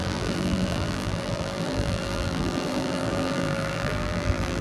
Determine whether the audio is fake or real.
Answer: fake